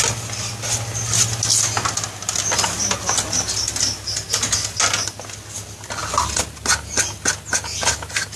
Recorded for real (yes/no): yes